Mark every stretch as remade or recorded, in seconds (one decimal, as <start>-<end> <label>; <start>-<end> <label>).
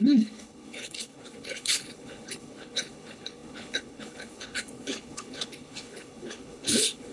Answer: 0.0-7.1 remade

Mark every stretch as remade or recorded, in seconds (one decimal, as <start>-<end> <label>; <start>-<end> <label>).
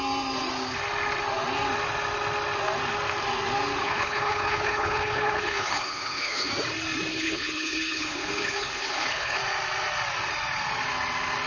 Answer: 0.0-3.8 recorded; 3.8-6.5 remade; 6.5-7.1 recorded; 7.1-9.4 remade; 9.4-11.5 recorded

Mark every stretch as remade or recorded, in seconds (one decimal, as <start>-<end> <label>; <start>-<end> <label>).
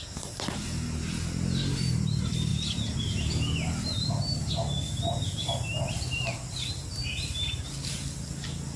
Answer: 0.0-8.8 recorded